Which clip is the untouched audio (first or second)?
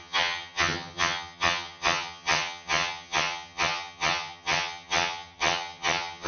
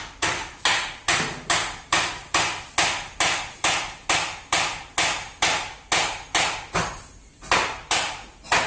second